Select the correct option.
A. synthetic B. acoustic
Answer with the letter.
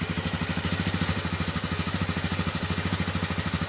B